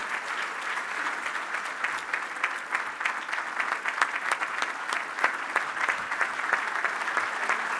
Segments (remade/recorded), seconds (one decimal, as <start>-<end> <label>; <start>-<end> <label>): 0.0-7.8 recorded